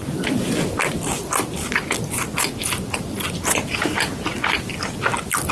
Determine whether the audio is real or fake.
real